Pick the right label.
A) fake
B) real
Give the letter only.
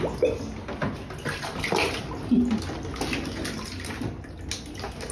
B